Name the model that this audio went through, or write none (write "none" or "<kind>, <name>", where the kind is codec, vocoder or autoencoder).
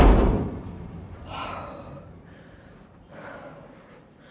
vocoder, BigVGAN v2